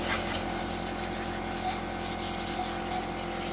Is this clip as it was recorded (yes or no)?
yes